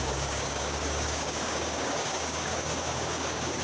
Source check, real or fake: fake